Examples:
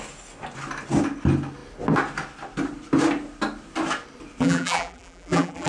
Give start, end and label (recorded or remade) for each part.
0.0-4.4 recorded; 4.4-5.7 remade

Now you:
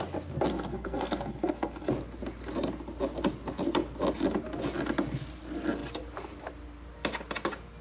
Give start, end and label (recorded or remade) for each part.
0.0-0.5 recorded; 0.5-1.9 remade; 1.9-7.8 recorded

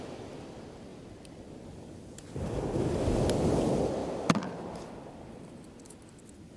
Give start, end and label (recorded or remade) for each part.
0.0-6.6 recorded

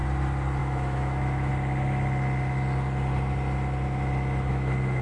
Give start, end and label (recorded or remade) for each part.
0.0-0.6 recorded; 0.6-1.5 remade; 1.5-4.5 recorded; 4.5-5.0 remade

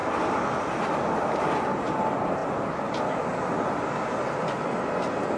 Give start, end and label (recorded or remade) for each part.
0.0-0.9 remade; 0.9-5.4 recorded

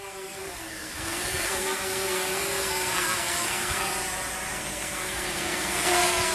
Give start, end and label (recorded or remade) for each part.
0.0-3.9 remade; 3.9-4.5 recorded; 4.5-6.3 remade

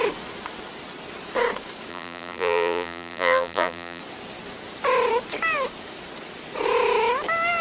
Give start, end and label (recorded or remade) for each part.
0.0-1.9 recorded; 1.9-4.0 remade; 4.0-7.6 recorded

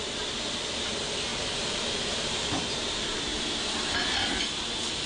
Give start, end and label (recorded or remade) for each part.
0.0-3.3 remade; 3.3-4.6 recorded; 4.6-5.1 remade